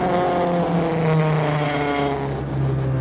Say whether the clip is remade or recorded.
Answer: recorded